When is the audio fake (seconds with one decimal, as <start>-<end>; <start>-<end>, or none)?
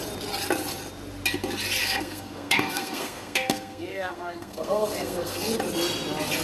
1.8-5.5